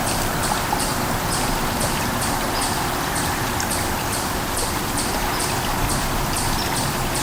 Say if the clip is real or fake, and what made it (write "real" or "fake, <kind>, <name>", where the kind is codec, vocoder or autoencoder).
fake, vocoder, BigVGAN v2